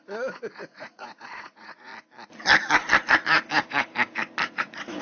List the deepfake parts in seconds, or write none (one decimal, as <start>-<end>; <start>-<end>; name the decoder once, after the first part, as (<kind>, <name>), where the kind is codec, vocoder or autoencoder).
0.0-1.9 (vocoder, Vocos); 4.6-5.0